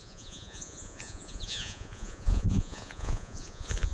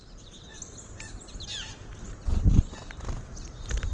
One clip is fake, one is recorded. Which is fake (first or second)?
first